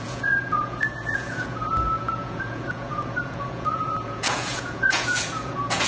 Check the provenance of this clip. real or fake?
fake